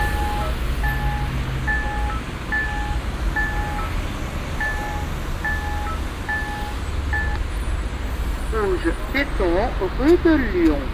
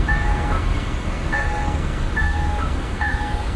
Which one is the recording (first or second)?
first